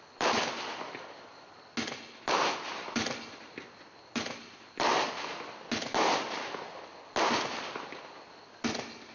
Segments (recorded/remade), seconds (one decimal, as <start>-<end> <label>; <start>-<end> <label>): 0.0-9.1 recorded